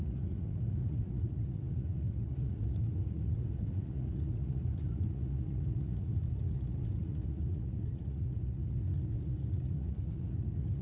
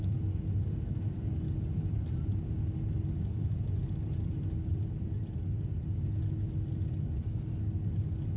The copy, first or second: first